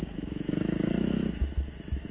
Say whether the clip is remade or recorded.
remade